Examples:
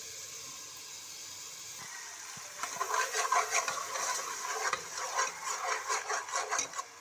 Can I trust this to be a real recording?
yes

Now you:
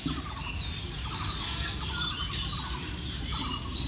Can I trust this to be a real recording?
yes